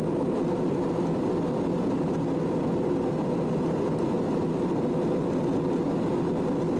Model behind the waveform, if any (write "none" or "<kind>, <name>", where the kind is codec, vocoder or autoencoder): none